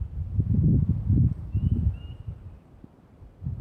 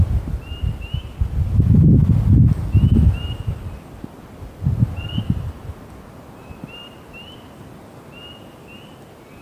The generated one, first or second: first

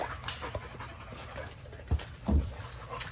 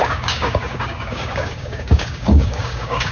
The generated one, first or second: second